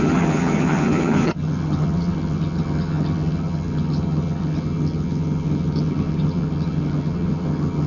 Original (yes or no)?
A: no